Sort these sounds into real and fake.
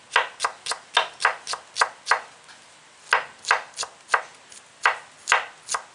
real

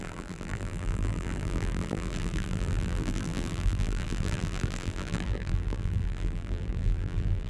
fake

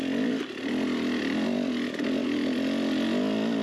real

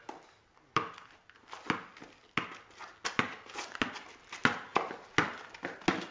real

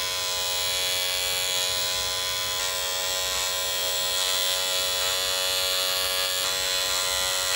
real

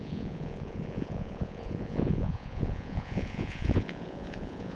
fake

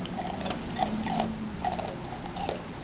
real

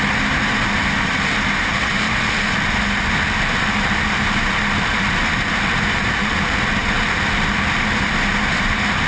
real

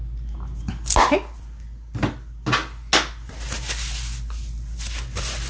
real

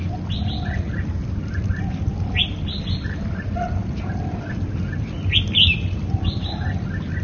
real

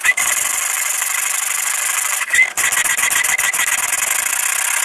real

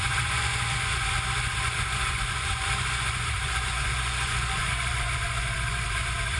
fake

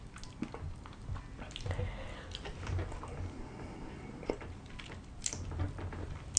real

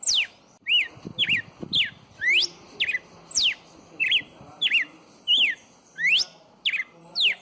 real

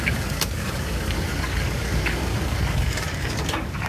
fake